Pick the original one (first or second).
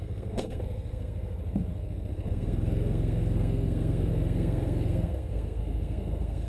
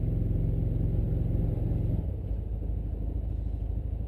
second